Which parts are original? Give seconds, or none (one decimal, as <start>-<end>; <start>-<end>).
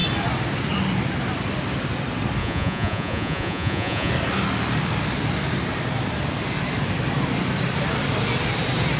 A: 0.0-2.4; 4.1-9.0